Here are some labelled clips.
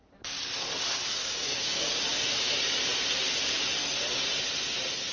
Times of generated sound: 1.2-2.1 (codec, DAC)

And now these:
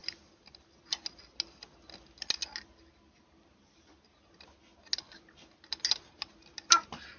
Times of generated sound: none

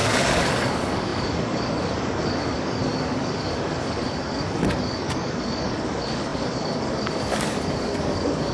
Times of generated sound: 0.0-8.5 (codec, DAC)

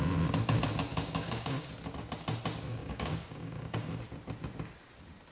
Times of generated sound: 0.9-1.7 (codec, DAC); 2.8-4.0

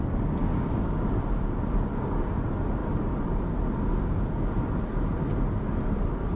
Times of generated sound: 0.4-1.1 (codec, DAC)

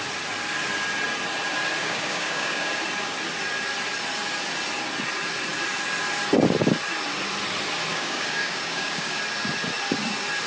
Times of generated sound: 1.8-2.8 (codec, DAC); 7.9-9.2

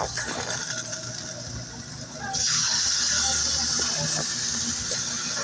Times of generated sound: 0.0-0.9 (codec, DAC); 2.3-3.4; 4.9-5.4